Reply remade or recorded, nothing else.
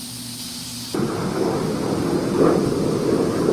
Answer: recorded